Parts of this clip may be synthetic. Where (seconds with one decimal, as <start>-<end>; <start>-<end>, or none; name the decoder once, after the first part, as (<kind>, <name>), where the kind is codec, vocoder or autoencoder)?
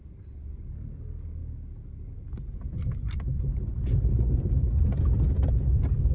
none